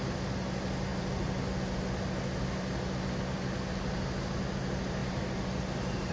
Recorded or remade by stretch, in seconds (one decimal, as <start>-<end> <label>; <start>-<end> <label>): 0.0-6.1 recorded